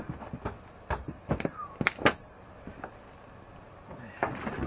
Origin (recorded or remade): recorded